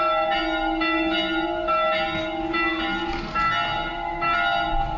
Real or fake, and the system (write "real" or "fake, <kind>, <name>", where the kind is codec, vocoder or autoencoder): real